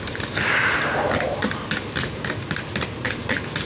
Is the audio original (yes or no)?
yes